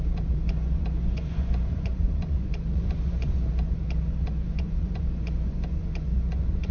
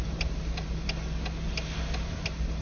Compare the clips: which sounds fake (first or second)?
first